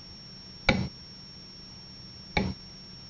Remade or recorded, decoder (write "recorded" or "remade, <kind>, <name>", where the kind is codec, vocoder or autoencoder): recorded